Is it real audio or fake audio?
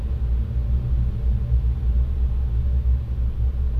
real